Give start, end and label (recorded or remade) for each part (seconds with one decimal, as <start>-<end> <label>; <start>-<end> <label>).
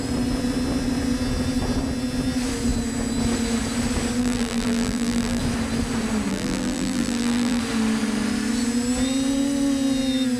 0.0-4.2 recorded; 4.2-5.4 remade; 5.4-6.3 recorded; 6.3-7.6 remade; 7.6-10.4 recorded